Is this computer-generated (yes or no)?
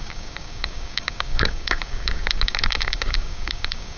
yes